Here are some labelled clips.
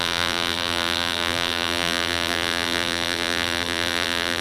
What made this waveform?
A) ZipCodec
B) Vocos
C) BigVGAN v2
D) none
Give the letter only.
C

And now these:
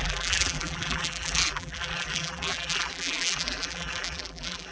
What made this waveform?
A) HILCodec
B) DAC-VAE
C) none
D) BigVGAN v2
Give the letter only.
D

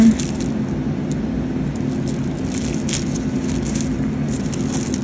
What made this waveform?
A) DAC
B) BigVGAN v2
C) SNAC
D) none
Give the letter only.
D